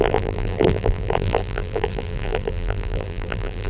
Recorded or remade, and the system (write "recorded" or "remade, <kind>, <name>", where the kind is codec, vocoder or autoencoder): remade, vocoder, BigVGAN v2